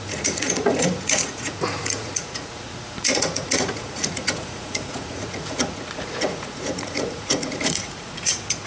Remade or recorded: remade